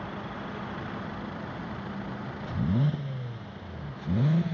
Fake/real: real